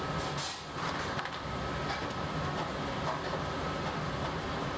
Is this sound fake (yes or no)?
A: no